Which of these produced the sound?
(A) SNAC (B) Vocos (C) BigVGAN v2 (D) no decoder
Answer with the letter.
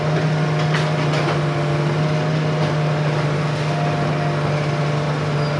D